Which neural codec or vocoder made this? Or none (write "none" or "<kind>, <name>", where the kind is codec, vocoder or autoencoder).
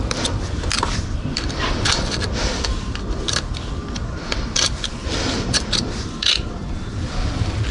vocoder, BigVGAN v2